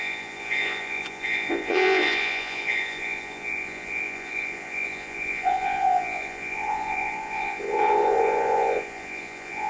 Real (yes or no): no